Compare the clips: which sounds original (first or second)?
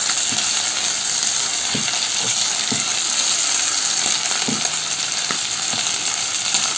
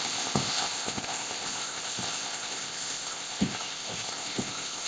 first